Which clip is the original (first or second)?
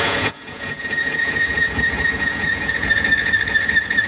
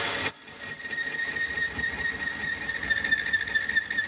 second